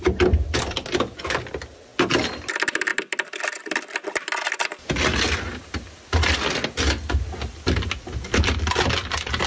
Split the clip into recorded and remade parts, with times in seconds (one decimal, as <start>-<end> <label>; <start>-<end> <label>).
0.0-9.5 recorded